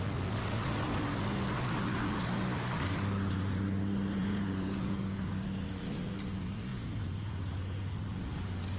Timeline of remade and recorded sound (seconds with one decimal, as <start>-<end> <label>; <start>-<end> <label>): 0.0-4.2 recorded; 4.2-5.3 remade; 5.3-6.7 recorded; 6.7-7.9 remade; 7.9-8.8 recorded